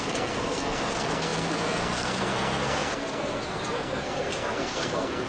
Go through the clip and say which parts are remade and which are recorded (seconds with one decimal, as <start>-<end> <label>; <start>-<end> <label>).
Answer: 0.0-5.3 remade